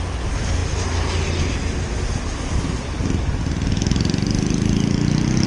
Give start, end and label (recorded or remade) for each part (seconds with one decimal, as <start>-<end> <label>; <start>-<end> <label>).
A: 0.0-5.5 recorded